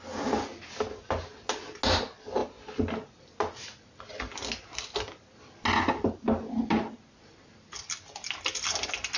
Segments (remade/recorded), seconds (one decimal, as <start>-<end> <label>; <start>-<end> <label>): 0.0-9.2 recorded